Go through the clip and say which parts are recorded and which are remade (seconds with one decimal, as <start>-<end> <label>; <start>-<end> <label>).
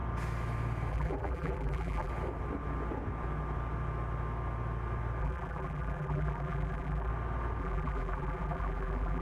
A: 0.0-0.9 recorded; 0.9-2.1 remade; 2.1-5.2 recorded; 5.2-7.1 remade; 7.1-7.6 recorded; 7.6-9.2 remade